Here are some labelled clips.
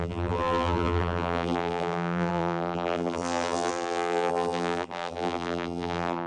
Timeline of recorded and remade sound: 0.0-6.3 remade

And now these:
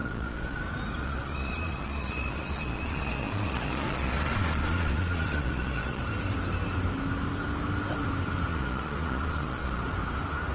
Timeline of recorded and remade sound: 0.0-0.6 remade; 0.6-1.0 recorded; 1.0-6.0 remade; 6.0-8.5 recorded; 8.5-9.8 remade; 9.8-10.5 recorded

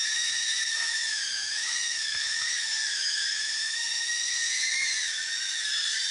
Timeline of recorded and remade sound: 0.0-6.1 remade

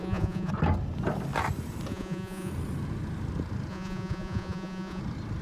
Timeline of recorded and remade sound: 0.0-0.5 remade; 0.5-1.9 recorded; 1.9-2.5 remade; 2.5-3.7 recorded; 3.7-5.0 remade; 5.0-5.4 recorded

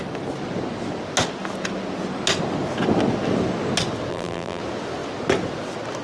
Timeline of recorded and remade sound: 0.0-4.1 recorded; 4.1-4.6 remade; 4.6-6.0 recorded

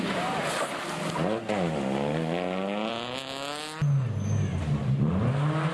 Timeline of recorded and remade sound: 0.0-5.7 recorded

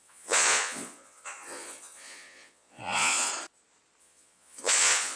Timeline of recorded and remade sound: 0.0-3.3 remade; 3.3-4.0 recorded; 4.0-5.2 remade

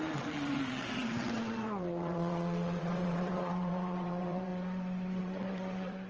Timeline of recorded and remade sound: 0.0-4.5 remade; 4.5-5.2 recorded; 5.2-6.1 remade